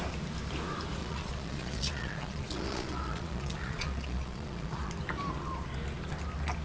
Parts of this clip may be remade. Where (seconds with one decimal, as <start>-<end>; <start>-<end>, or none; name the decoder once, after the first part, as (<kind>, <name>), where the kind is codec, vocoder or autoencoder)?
1.0-4.9 (vocoder, Vocos)